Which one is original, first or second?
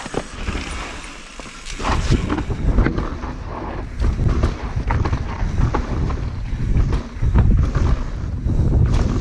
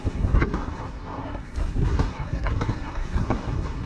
first